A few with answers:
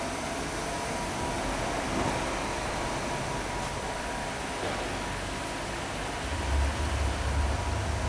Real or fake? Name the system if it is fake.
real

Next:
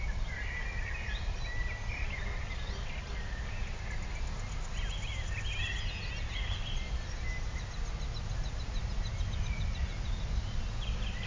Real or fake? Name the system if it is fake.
real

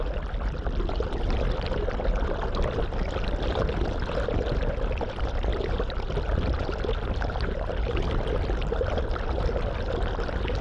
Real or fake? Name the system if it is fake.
real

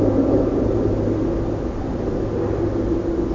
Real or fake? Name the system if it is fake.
real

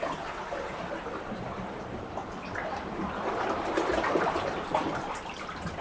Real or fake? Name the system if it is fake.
real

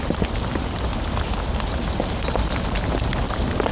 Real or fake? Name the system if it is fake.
real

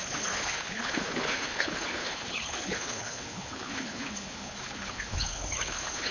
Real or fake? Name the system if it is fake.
fake, codec, HILCodec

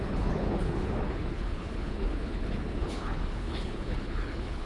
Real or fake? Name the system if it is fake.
fake, codec, HILCodec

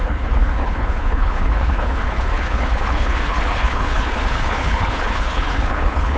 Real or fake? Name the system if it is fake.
fake, codec, HILCodec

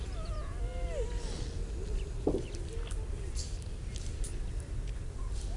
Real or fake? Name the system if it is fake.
real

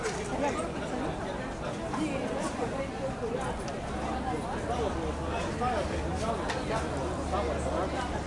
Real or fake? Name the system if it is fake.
real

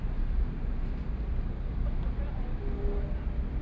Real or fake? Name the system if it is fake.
real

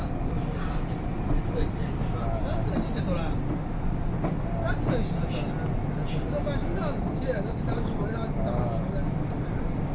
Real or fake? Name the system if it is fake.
real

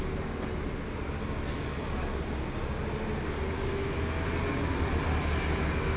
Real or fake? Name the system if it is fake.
real